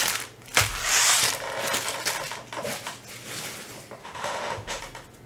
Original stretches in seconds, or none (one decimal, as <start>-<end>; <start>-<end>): 0.0-4.0; 4.8-5.3